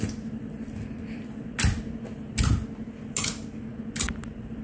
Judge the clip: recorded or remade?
recorded